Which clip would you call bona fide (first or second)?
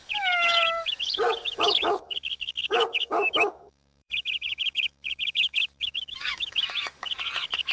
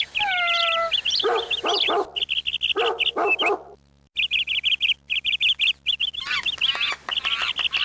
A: second